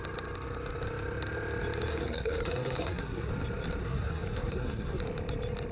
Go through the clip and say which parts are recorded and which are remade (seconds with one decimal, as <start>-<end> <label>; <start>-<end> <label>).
0.0-1.9 recorded; 1.9-3.3 remade; 3.3-3.8 recorded; 3.8-5.0 remade; 5.0-5.7 recorded